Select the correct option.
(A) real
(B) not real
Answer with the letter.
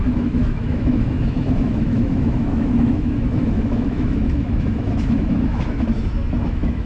B